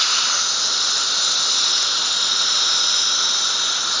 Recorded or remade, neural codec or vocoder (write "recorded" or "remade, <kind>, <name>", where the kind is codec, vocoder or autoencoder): recorded